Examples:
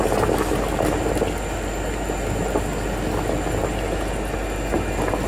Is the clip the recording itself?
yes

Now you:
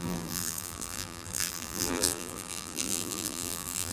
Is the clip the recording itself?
no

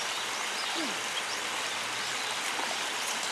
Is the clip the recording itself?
yes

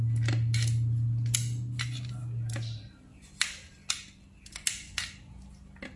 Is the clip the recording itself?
yes